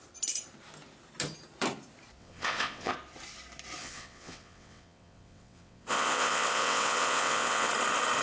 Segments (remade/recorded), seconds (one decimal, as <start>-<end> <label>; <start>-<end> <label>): 0.0-2.2 recorded; 2.2-2.9 remade; 2.9-3.8 recorded; 3.8-7.7 remade; 7.7-8.2 recorded